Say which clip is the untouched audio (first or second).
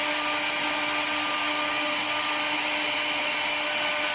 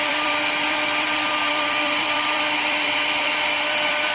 first